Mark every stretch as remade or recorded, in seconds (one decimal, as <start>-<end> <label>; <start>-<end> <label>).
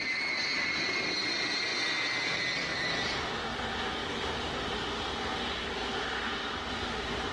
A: 0.0-7.3 recorded